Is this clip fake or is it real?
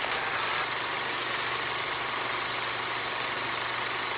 fake